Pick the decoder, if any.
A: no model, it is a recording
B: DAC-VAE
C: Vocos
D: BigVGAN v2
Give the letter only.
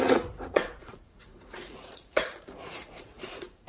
C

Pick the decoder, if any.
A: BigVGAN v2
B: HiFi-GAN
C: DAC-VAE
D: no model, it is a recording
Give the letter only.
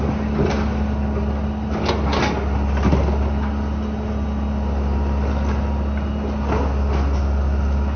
D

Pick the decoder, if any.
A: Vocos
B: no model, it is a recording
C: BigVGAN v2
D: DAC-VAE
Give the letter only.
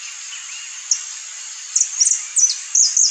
B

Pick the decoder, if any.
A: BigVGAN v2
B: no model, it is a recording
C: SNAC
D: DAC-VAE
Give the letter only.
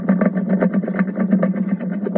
B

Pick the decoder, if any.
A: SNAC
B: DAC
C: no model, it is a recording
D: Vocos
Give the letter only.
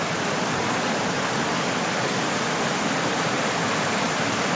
C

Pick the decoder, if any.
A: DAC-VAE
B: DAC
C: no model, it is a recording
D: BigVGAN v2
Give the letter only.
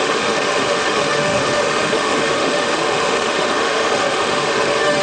A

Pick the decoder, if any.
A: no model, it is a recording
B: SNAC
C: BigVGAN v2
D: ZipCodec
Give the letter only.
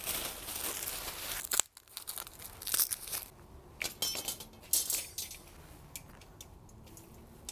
A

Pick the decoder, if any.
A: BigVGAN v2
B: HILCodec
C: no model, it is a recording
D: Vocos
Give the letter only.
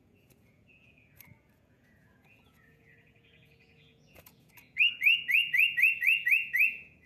D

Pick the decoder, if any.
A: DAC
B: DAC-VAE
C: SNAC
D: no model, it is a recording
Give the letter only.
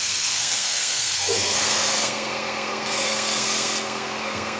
C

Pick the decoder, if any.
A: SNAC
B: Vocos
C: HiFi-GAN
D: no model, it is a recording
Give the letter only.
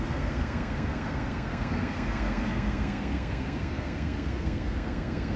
A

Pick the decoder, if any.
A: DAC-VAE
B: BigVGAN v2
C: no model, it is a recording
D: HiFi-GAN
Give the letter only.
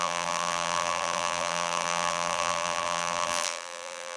B